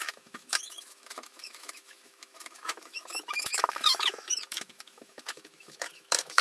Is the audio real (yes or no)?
no